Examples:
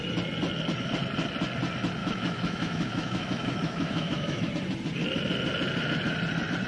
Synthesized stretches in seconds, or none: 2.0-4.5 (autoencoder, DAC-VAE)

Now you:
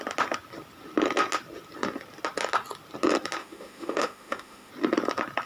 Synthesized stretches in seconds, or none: 3.4-4.7 (autoencoder, DAC-VAE)

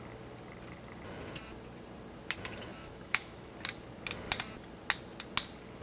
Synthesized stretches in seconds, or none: 2.7-3.5 (autoencoder, DAC-VAE)

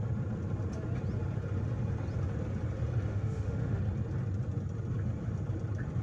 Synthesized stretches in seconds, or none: 3.1-3.8 (autoencoder, DAC-VAE)

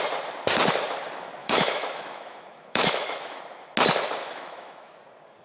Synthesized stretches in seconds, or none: 1.4-3.4 (autoencoder, DAC-VAE); 4.2-5.0

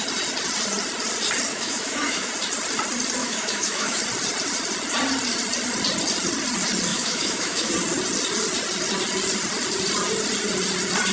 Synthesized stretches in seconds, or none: 1.5-2.3 (autoencoder, DAC-VAE); 3.2-4.0; 6.9-7.7